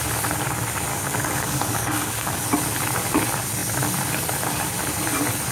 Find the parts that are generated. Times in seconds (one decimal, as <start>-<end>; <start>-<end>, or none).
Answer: 0.9-2.4